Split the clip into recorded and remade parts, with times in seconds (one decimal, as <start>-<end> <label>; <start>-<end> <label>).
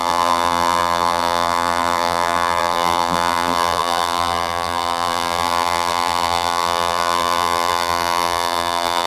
0.0-9.1 remade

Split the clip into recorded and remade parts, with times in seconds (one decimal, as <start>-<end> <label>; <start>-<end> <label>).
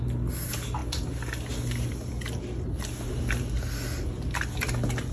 0.0-5.1 recorded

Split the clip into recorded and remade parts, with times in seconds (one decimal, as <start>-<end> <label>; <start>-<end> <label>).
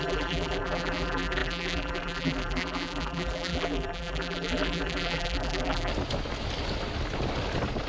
0.0-5.9 remade; 5.9-7.9 recorded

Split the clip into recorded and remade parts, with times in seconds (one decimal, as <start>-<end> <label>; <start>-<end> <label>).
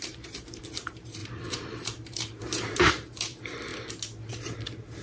0.0-3.7 remade; 3.7-4.3 recorded; 4.3-5.0 remade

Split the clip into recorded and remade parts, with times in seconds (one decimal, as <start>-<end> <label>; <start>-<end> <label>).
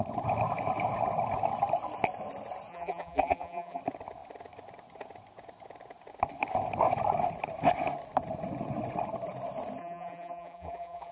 0.0-2.7 recorded; 2.7-3.8 remade; 3.8-9.8 recorded; 9.8-11.1 remade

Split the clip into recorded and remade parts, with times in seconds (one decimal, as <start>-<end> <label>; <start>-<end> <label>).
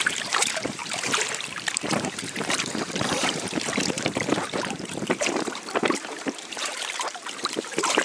0.0-8.0 remade